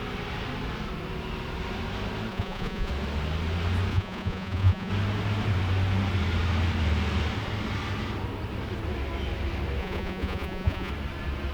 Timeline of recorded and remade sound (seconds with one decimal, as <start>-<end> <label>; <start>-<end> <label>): 0.0-2.3 recorded; 2.3-2.9 remade; 2.9-3.9 recorded; 3.9-4.9 remade; 4.9-9.8 recorded; 9.8-10.9 remade; 10.9-11.5 recorded